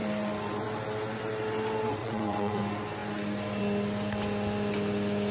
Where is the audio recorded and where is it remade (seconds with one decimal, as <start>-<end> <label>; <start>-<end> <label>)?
0.0-2.0 recorded; 2.0-2.6 remade; 2.6-5.3 recorded